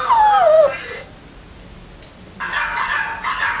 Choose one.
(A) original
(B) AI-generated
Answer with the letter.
A